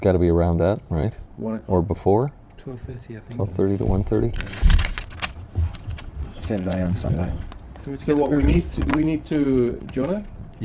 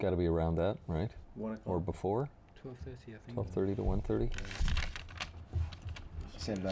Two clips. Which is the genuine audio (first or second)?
second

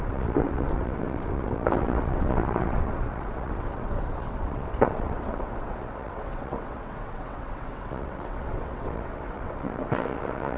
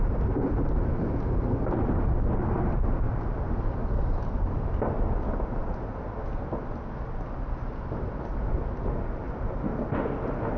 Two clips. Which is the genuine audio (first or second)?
second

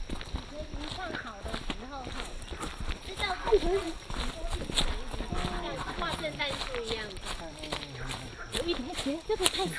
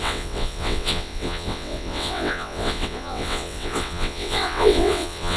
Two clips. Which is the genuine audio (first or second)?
first